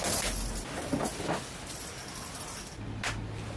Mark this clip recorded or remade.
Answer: recorded